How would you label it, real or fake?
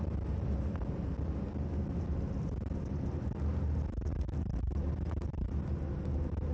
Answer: real